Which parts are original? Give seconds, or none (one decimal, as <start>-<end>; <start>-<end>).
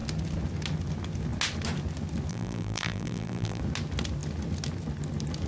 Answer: 0.0-2.3; 3.6-5.5